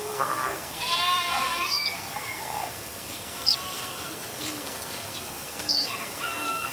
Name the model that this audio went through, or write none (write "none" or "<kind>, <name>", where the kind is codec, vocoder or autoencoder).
codec, SNAC